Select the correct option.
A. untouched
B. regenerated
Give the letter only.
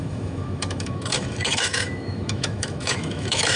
B